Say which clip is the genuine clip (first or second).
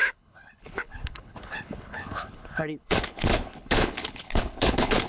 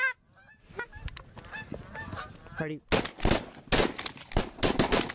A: second